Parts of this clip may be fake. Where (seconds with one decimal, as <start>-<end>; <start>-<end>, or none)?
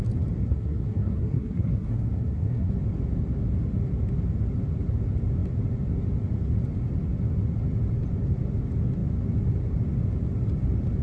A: 0.4-2.7